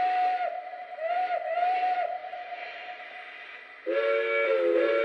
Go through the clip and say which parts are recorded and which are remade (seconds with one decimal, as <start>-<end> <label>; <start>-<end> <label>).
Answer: 0.0-0.8 recorded; 0.8-1.8 remade; 1.8-2.2 recorded; 2.2-3.0 remade; 3.0-5.0 recorded